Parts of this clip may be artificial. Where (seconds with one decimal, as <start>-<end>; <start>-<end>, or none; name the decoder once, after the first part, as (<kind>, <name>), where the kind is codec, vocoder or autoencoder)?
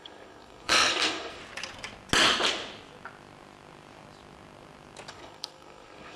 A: 0.0-1.4 (codec, SNAC); 5.1-6.2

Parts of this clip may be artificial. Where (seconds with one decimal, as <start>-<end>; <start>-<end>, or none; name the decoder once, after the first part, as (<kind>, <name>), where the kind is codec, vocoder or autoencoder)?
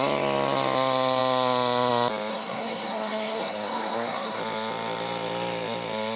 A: 2.3-4.4 (codec, SNAC)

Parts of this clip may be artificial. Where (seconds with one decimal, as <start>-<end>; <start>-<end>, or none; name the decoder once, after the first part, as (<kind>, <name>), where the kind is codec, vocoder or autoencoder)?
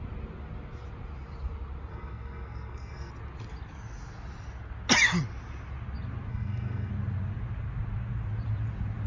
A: 1.9-3.1 (codec, SNAC); 6.3-6.9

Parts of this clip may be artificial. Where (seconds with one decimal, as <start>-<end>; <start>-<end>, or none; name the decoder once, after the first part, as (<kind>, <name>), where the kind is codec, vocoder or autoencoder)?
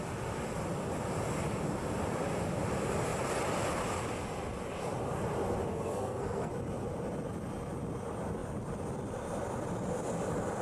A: 5.7-6.5 (codec, SNAC)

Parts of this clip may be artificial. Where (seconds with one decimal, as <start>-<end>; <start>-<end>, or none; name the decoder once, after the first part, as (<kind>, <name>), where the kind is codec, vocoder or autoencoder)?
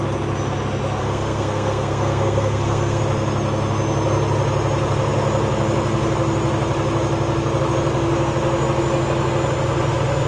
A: 1.0-3.0 (codec, SNAC)